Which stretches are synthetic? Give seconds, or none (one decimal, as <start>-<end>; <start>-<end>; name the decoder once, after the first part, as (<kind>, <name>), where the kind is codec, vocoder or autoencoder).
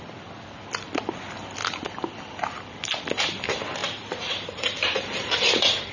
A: 3.8-5.9 (vocoder, BigVGAN v2)